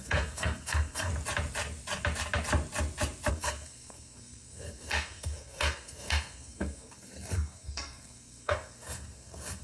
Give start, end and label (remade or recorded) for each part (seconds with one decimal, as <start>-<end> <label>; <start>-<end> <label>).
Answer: 0.0-1.1 remade; 1.1-3.3 recorded; 3.3-9.6 remade